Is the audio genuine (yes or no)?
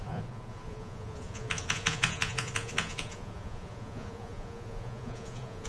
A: no